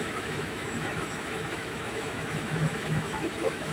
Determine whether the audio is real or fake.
fake